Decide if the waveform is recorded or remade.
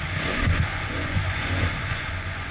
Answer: remade